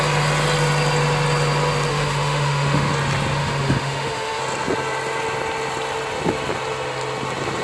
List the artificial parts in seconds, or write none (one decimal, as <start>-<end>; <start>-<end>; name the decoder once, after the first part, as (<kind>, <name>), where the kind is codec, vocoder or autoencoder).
1.9-2.9 (autoencoder, DAC-VAE); 3.4-4.4